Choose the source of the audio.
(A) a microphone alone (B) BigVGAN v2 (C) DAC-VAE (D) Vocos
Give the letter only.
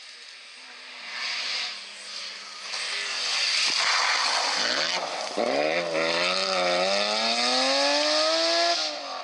A